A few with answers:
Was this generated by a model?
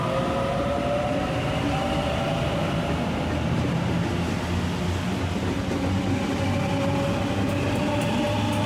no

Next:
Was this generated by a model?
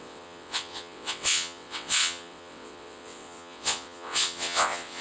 yes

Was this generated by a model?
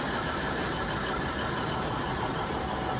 no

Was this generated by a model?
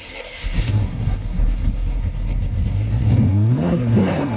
yes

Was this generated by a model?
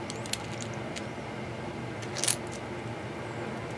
no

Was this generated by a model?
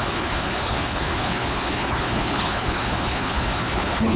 yes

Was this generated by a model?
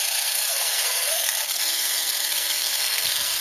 yes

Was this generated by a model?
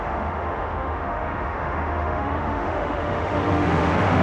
yes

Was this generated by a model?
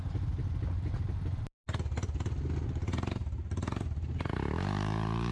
no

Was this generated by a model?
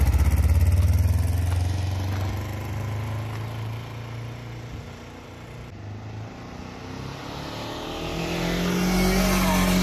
no